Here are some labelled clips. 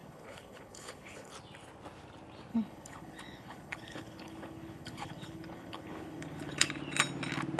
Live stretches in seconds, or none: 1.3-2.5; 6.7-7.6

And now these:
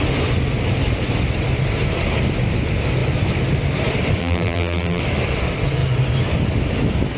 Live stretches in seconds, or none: 0.0-4.2; 5.0-7.2

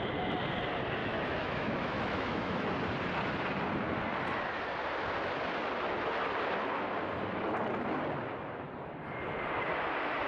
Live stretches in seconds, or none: 0.0-1.0; 2.7-10.3